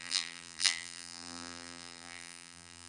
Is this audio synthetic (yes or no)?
yes